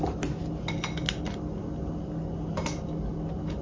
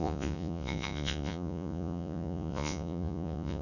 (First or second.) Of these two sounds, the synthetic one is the second